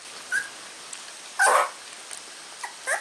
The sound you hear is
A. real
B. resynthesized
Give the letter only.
A